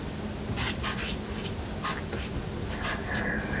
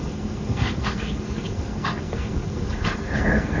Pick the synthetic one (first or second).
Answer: second